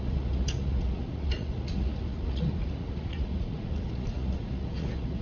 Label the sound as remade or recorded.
remade